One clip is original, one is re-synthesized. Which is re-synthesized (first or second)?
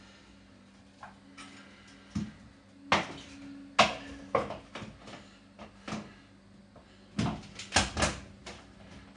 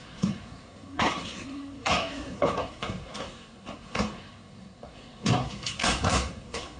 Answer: second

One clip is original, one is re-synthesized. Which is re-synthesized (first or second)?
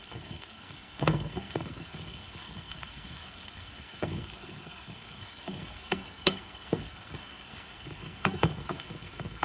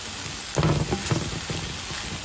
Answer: first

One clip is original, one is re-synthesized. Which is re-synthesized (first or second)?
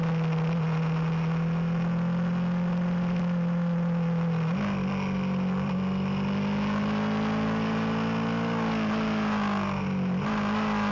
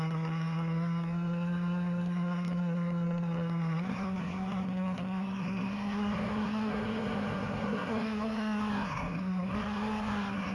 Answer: second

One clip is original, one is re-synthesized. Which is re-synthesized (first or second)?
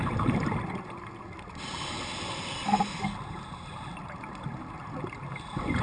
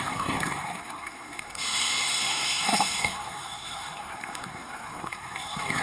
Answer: second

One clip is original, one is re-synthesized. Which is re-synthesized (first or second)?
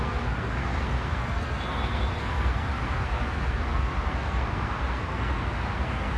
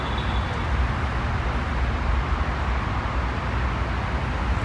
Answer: first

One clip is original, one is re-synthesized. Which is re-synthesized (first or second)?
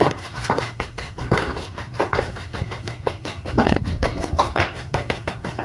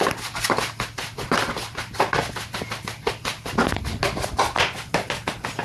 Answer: first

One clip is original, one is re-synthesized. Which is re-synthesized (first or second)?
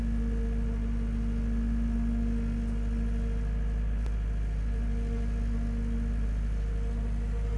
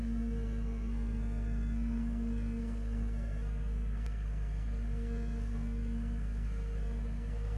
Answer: second